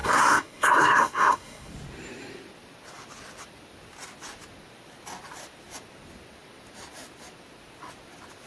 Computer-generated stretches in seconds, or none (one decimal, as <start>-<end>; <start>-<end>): 0.0-1.7